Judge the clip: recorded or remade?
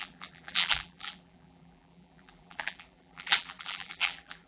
remade